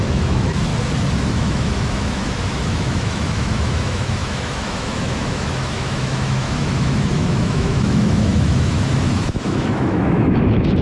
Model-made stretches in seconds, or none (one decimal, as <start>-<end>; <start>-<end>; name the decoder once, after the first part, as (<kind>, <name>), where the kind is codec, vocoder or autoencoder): 0.0-0.7 (autoencoder, DAC-VAE); 1.3-10.8